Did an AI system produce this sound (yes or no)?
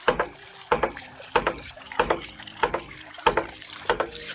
yes